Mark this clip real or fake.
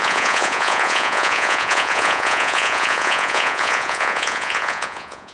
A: fake